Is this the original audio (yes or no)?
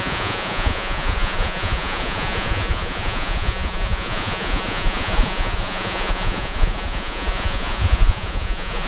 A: no